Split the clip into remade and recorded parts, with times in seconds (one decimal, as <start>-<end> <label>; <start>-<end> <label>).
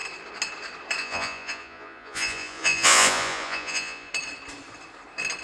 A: 0.0-1.0 recorded; 1.0-4.1 remade; 4.1-5.4 recorded